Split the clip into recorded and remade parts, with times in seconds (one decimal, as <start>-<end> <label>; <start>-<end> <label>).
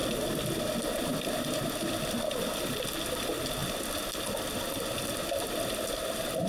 0.0-6.5 recorded